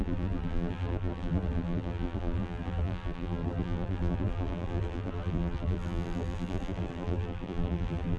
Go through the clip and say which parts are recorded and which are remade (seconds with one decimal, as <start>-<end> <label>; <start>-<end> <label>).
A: 0.0-8.2 remade